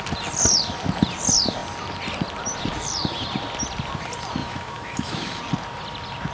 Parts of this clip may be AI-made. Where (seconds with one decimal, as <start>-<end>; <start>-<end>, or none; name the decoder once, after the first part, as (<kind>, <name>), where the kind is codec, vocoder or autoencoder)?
4.4-5.4 (autoencoder, DAC-VAE)